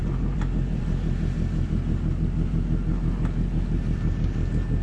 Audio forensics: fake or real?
fake